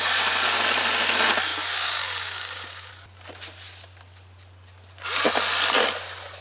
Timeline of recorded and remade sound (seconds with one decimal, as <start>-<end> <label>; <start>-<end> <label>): 0.0-1.5 recorded; 1.5-2.9 remade; 2.9-6.4 recorded